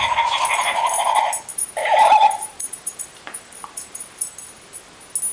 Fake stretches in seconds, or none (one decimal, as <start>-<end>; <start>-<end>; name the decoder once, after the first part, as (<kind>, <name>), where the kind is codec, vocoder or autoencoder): 1.5-4.2 (vocoder, BigVGAN v2)